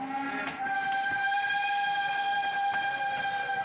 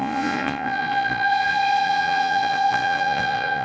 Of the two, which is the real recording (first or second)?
first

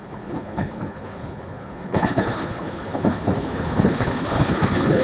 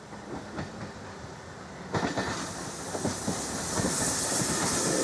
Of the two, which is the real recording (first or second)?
second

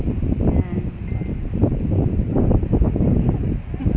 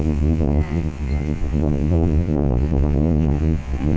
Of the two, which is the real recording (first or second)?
first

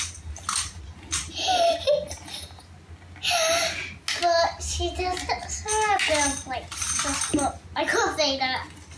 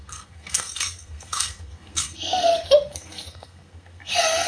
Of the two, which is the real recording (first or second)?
first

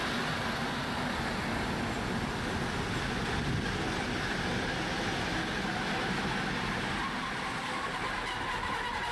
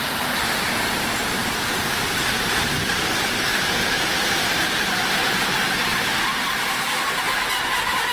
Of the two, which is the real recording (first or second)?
first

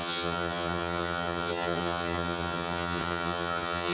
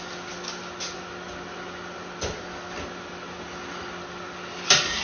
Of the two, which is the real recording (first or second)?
second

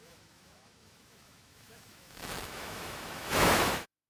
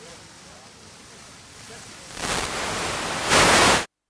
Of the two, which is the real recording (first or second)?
second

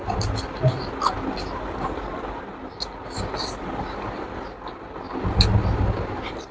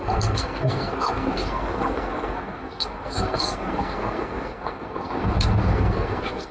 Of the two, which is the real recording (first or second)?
first